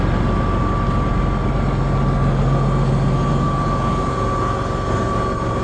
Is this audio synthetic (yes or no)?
no